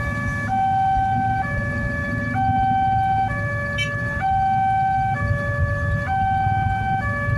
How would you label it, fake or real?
real